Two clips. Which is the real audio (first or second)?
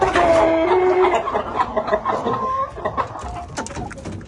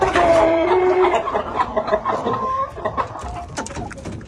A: first